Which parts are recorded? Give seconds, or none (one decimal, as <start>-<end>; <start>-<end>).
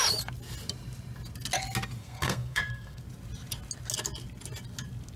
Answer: 0.0-2.0; 3.0-5.2